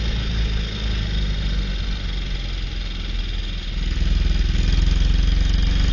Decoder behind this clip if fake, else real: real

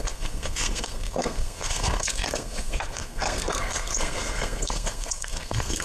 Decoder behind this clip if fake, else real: fake, codec, SNAC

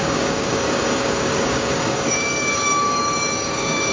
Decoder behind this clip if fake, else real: fake, codec, DAC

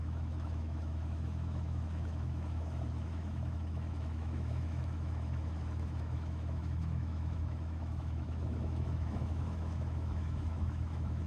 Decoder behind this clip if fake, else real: fake, autoencoder, DAC-VAE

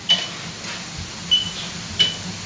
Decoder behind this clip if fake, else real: real